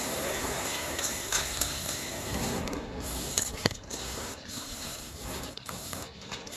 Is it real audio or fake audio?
fake